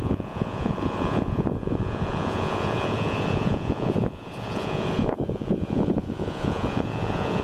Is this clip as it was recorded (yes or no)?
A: no